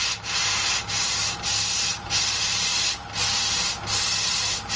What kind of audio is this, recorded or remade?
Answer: recorded